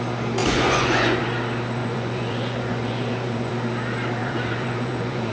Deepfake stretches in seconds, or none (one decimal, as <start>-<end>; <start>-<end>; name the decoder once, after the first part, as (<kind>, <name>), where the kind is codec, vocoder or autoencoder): 0.4-1.2 (vocoder, Vocos); 1.8-3.5; 4.2-5.3